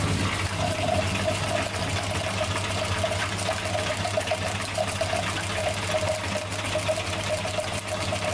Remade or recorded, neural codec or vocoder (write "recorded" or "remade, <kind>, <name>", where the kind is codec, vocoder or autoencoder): recorded